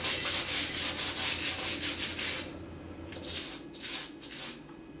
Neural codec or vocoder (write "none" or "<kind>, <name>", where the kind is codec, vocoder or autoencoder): none